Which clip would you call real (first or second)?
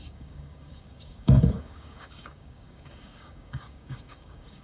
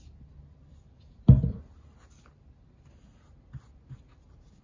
second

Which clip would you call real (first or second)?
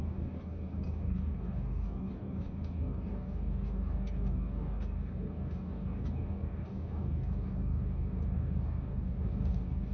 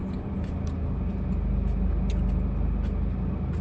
second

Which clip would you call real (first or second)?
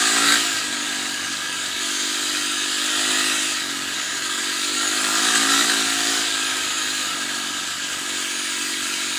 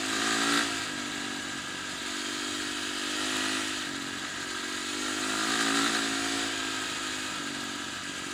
second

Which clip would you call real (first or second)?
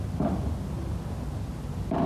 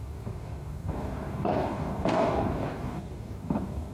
first